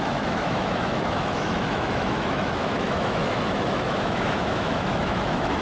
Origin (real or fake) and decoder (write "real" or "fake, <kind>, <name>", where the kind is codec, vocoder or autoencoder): fake, autoencoder, DAC-VAE